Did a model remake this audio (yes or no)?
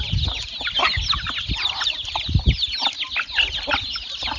no